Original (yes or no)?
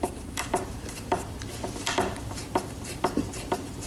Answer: no